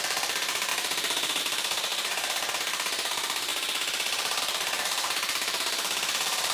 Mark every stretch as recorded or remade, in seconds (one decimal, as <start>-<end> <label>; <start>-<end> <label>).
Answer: 0.0-6.5 remade